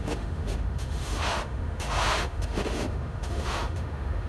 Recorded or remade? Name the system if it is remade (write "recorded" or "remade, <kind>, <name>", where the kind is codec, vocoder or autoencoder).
remade, autoencoder, DAC-VAE